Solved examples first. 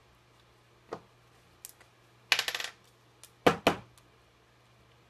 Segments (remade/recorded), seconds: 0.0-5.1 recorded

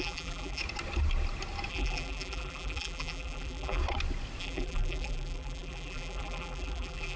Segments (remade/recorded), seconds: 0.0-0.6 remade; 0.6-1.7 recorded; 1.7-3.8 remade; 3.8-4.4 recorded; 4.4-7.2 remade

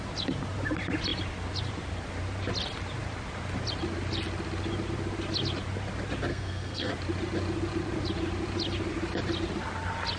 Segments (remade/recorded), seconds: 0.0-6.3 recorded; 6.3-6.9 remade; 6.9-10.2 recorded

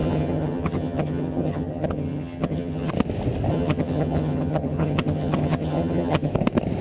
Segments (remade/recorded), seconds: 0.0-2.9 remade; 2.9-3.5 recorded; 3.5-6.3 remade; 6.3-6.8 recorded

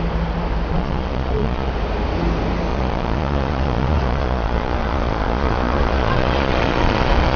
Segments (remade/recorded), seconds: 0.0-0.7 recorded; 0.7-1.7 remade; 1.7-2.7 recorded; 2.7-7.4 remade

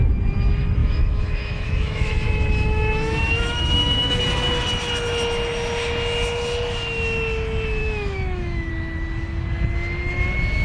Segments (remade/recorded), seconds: 0.0-0.8 recorded; 0.8-4.2 remade; 4.2-7.8 recorded; 7.8-8.7 remade; 8.7-10.6 recorded

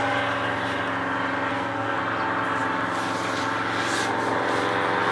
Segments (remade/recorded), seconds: 0.0-1.5 recorded; 1.5-2.0 remade; 2.0-5.1 recorded

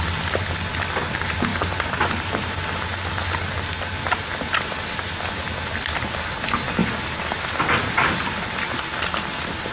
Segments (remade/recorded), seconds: 0.0-9.7 recorded